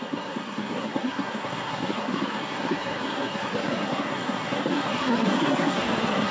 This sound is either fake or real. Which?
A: fake